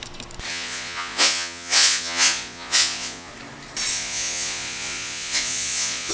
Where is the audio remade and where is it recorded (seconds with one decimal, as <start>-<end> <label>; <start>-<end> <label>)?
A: 0.0-0.5 recorded; 0.5-3.3 remade; 3.3-3.9 recorded; 3.9-6.1 remade